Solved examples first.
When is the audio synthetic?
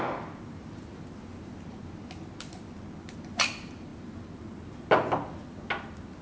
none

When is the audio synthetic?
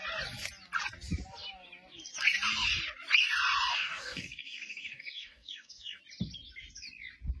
3.7-6.0 (codec, DAC)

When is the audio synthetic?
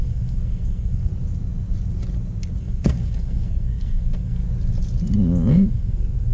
0.0-1.1 (codec, SNAC); 2.6-4.4; 5.5-6.3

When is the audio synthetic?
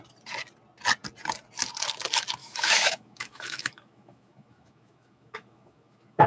2.4-6.3 (autoencoder, DAC-VAE)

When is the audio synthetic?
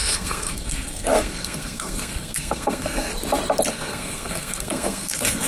0.0-3.1 (codec, SNAC); 3.7-5.5